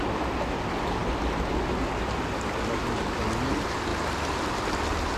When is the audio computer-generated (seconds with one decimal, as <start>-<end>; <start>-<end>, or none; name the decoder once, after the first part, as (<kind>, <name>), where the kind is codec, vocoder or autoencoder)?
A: none